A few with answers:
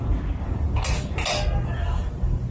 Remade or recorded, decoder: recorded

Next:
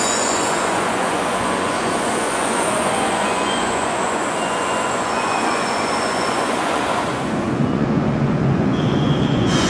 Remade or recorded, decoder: remade, vocoder, Vocos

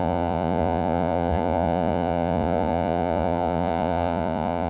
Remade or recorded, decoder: remade, vocoder, Vocos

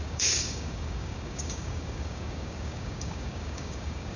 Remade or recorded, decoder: remade, codec, DAC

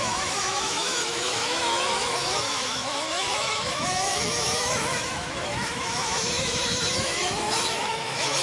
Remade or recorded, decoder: remade, autoencoder, DAC-VAE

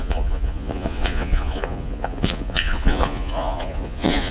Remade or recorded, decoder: remade, vocoder, Vocos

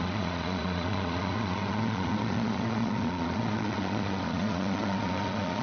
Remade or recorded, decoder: remade, vocoder, Vocos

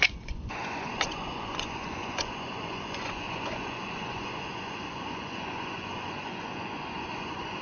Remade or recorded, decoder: remade, vocoder, Vocos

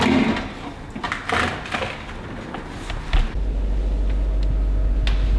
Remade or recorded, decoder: recorded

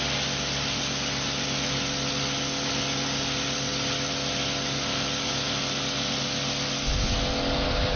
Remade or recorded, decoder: recorded